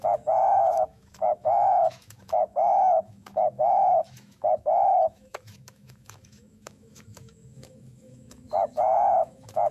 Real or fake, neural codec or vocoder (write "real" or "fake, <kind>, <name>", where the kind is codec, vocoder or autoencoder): fake, autoencoder, DAC-VAE